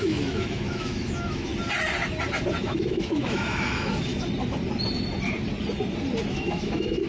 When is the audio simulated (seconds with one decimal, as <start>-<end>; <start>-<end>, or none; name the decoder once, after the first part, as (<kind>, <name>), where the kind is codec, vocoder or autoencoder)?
0.0-1.5 (autoencoder, DAC-VAE); 2.6-4.1; 6.3-7.1